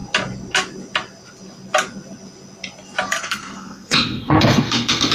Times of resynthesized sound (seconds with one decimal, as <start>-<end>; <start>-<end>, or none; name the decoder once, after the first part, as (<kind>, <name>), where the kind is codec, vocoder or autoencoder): 3.1-5.1 (codec, SNAC)